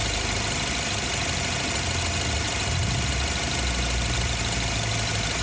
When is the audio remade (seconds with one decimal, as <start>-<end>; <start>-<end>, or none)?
none